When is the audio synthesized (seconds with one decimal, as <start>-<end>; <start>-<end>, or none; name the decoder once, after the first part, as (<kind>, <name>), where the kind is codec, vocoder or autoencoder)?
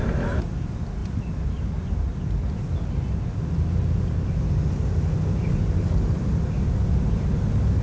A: none